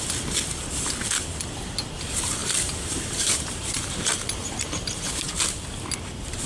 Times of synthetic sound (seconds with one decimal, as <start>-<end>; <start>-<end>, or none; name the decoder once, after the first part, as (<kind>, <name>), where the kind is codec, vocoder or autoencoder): 2.4-5.0 (vocoder, BigVGAN v2)